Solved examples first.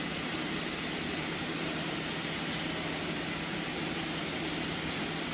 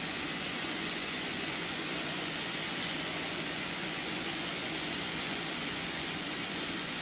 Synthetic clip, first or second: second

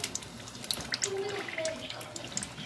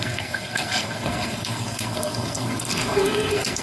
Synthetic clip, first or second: second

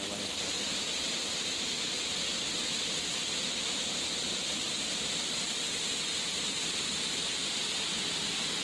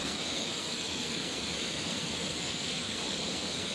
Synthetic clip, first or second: second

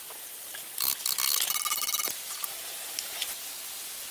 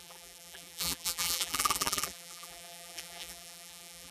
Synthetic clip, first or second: second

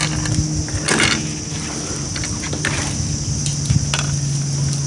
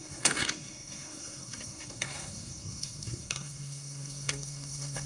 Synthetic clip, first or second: second